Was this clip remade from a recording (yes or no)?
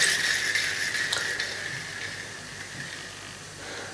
no